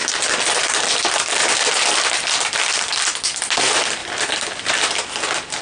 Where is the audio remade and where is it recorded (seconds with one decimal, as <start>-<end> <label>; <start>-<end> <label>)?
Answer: 0.0-3.4 remade; 3.4-4.0 recorded; 4.0-4.8 remade; 4.8-5.6 recorded